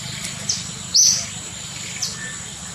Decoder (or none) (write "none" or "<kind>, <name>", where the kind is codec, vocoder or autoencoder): none